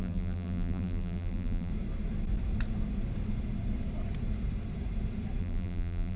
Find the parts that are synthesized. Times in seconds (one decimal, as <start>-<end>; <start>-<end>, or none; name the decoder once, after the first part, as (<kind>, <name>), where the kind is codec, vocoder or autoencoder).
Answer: 0.0-1.7 (vocoder, BigVGAN v2); 5.4-6.2